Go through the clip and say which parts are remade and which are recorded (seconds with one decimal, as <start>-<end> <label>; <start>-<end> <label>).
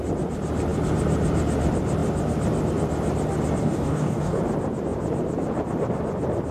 0.0-3.6 recorded; 3.6-4.4 remade; 4.4-6.5 recorded